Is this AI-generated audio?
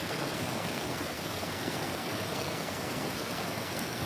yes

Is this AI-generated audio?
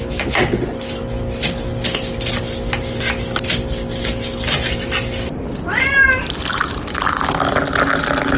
no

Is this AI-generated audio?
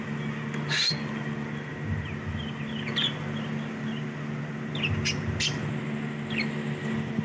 no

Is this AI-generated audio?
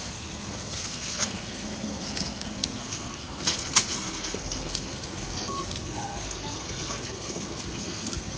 yes